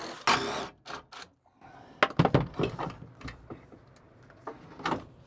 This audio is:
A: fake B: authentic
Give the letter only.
B